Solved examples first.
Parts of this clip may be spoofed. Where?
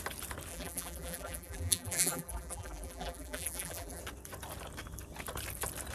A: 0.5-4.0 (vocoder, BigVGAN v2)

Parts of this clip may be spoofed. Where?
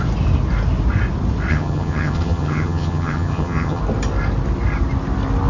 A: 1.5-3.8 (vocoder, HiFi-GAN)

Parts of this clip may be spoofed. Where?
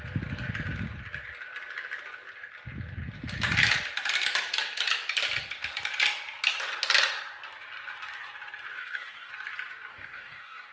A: 8.8-9.3 (codec, DAC); 9.9-10.7